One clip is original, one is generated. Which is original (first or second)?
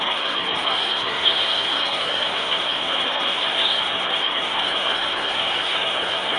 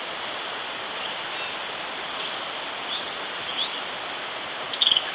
second